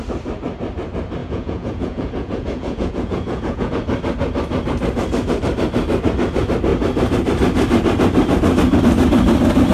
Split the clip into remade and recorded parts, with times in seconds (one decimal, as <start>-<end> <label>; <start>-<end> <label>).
0.0-1.2 recorded; 1.2-3.7 remade; 3.7-9.7 recorded